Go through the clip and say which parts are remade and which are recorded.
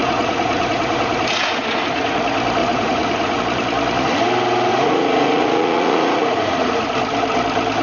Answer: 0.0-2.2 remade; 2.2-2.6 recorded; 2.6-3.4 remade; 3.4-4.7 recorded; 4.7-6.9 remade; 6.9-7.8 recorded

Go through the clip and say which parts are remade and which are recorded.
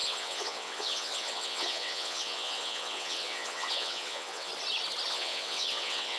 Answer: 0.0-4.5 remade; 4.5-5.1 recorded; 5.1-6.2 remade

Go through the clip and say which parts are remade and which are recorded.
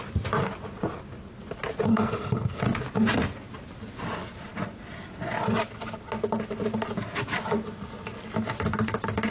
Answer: 0.0-1.9 recorded; 1.9-2.6 remade; 2.6-9.3 recorded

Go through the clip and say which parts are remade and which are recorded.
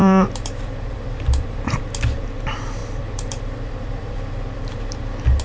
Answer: 0.0-1.8 remade; 1.8-2.8 recorded; 2.8-4.8 remade; 4.8-5.4 recorded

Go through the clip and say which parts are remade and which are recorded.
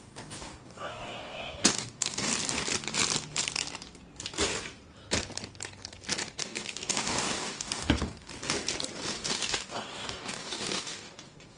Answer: 0.0-2.3 remade; 2.3-6.4 recorded; 6.4-8.3 remade; 8.3-9.1 recorded; 9.1-11.6 remade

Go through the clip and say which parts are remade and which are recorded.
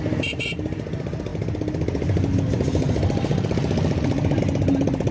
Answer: 0.0-5.1 recorded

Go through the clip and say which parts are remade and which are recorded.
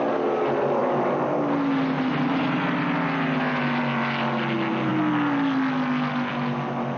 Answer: 0.0-7.0 recorded